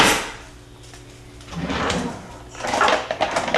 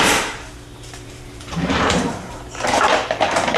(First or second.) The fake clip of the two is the second